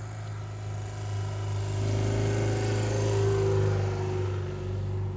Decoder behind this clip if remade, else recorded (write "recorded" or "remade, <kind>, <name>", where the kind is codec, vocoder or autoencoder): recorded